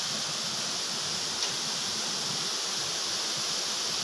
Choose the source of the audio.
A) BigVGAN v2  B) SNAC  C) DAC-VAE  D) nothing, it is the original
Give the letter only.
D